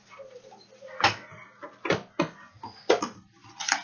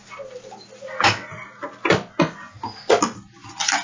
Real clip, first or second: second